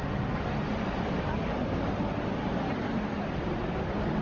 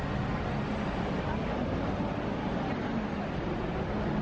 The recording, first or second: second